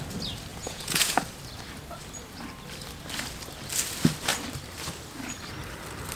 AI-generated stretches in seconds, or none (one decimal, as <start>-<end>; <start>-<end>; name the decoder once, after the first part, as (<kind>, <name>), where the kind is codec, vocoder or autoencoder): 0.5-1.2 (vocoder, Vocos)